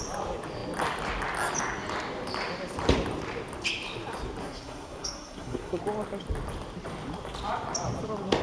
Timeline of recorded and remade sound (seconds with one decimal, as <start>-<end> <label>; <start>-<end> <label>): 0.0-4.4 recorded; 4.4-5.8 remade; 5.8-8.4 recorded